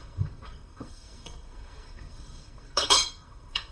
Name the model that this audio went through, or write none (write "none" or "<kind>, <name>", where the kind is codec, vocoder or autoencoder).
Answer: codec, SNAC